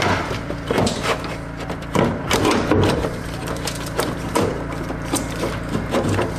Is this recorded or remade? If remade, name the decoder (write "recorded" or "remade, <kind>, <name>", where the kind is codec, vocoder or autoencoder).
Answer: remade, vocoder, BigVGAN v2